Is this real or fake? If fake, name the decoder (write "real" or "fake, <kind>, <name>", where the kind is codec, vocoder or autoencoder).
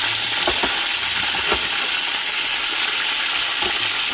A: real